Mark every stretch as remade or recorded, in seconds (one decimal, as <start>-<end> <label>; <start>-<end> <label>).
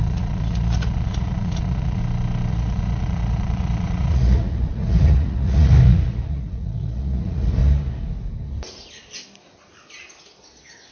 0.0-2.0 remade; 2.0-2.5 recorded; 2.5-7.6 remade; 7.6-10.9 recorded